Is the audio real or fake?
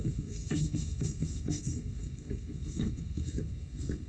fake